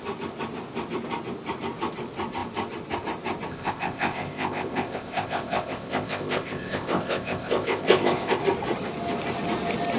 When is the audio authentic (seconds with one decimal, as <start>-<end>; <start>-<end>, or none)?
0.0-3.5; 8.4-10.0